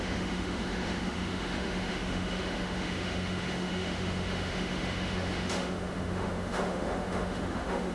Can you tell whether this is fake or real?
fake